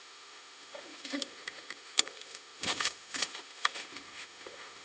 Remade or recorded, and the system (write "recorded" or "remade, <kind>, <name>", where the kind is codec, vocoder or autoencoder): remade, autoencoder, DAC-VAE